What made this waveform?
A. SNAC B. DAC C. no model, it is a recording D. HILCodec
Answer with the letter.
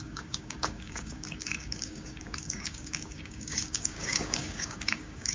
B